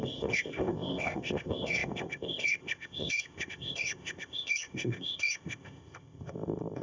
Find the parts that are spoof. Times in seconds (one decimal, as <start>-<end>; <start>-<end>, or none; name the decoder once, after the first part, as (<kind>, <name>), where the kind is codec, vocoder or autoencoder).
0.0-6.8 (codec, ZipCodec)